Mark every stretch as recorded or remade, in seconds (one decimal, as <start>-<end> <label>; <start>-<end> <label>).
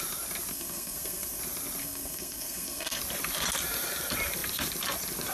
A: 0.0-0.5 recorded; 0.5-1.4 remade; 1.4-1.8 recorded; 1.8-3.0 remade; 3.0-5.3 recorded